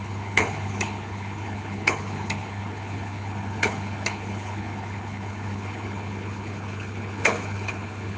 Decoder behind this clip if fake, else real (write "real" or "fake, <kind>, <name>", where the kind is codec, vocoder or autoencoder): fake, codec, HILCodec